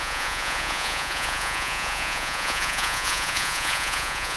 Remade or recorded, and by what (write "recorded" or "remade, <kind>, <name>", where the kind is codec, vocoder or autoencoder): remade, vocoder, Vocos